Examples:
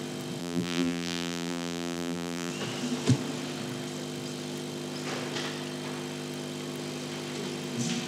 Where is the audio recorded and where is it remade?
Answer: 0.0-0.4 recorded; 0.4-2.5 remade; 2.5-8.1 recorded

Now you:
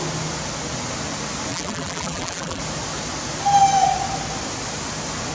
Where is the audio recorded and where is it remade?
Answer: 0.0-1.5 recorded; 1.5-2.6 remade; 2.6-5.3 recorded

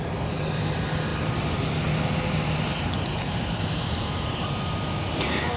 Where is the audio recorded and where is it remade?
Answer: 0.0-2.7 recorded; 2.7-4.7 remade; 4.7-5.6 recorded

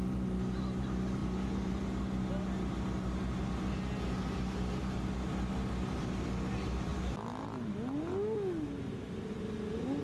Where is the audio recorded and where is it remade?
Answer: 0.0-10.0 recorded

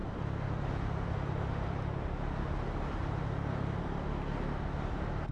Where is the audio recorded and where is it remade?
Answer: 0.0-5.3 recorded